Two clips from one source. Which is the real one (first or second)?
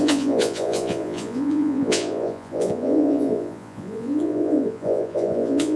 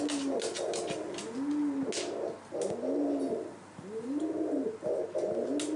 second